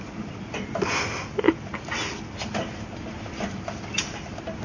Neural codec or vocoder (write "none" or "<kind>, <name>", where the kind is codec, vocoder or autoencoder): none